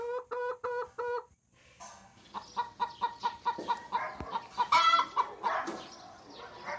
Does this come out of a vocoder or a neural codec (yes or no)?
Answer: no